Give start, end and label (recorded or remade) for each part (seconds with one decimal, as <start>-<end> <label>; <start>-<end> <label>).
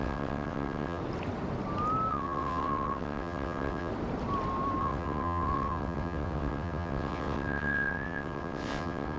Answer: 0.0-1.0 remade; 1.0-2.1 recorded; 2.1-3.9 remade; 3.9-4.8 recorded; 4.8-9.2 remade